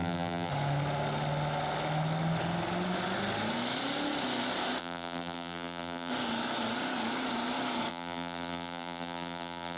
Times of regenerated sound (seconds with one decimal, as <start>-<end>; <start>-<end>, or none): 0.0-0.5; 4.8-6.1; 7.9-9.8